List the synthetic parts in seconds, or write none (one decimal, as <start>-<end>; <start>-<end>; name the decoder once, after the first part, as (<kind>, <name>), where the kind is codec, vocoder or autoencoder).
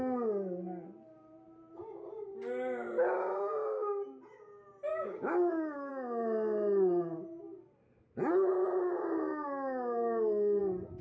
4.9-5.9 (codec, DAC); 9.3-10.6